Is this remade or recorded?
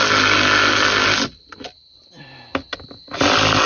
recorded